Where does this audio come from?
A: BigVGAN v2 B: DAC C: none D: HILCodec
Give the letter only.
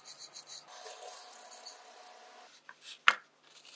C